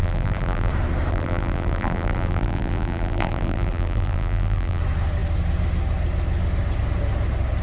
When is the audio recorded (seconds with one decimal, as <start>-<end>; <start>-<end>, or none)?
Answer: 0.7-1.1; 4.8-7.6